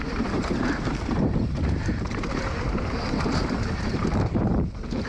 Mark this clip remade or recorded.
remade